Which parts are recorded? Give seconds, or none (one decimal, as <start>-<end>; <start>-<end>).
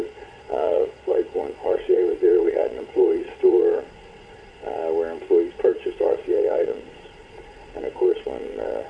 4.8-5.5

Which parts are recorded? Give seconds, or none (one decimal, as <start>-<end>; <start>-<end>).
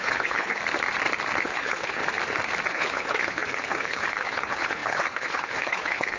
0.6-1.4; 2.0-2.7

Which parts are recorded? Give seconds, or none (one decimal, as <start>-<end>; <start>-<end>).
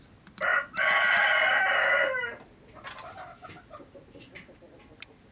0.0-5.3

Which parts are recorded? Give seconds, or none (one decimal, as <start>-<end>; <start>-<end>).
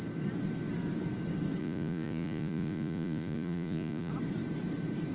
0.0-1.6; 4.1-5.1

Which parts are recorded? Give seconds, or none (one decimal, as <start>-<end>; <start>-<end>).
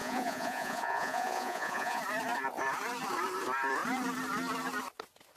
2.0-5.4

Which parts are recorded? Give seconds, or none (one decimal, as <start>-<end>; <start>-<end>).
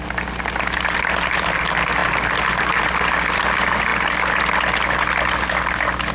0.0-6.1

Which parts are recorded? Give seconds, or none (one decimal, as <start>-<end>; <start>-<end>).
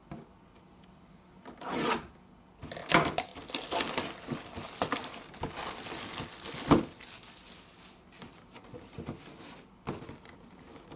0.0-11.0